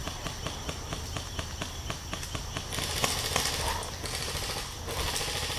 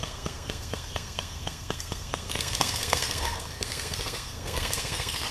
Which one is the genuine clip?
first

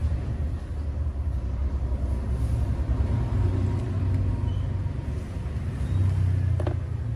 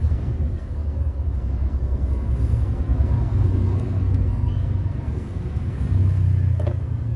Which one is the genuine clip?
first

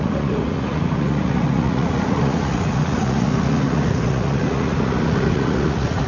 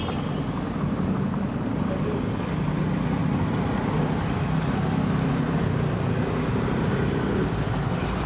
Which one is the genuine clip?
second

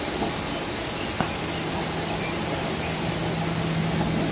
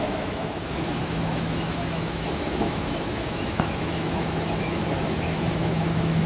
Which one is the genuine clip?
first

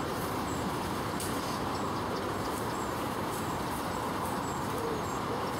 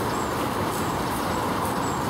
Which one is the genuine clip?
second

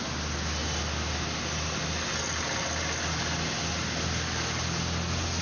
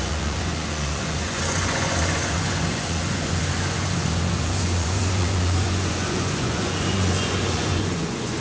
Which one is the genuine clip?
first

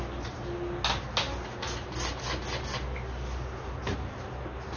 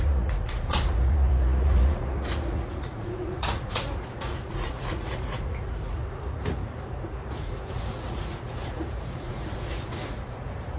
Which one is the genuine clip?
first